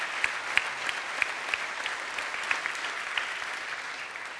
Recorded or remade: recorded